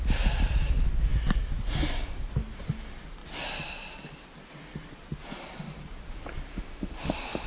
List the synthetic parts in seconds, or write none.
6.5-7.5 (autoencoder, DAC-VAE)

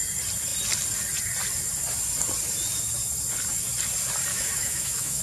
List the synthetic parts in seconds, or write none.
4.3-5.2 (autoencoder, DAC-VAE)

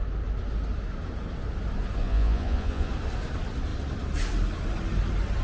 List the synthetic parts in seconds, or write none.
2.0-2.9 (vocoder, Vocos)